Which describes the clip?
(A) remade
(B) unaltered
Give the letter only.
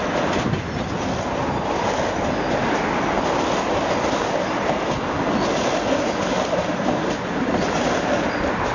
B